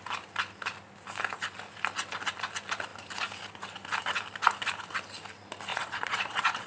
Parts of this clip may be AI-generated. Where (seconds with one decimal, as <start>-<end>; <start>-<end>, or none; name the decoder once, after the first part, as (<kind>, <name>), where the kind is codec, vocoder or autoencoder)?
5.7-6.7 (vocoder, Vocos)